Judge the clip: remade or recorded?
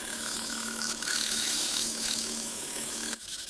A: remade